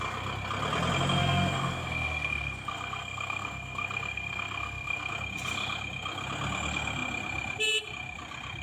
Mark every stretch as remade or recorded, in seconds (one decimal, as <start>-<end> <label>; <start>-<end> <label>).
0.0-1.2 recorded; 1.2-5.1 remade; 5.1-8.6 recorded